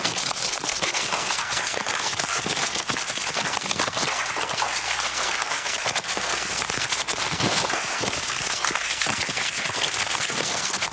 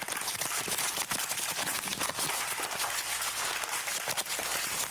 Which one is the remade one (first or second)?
first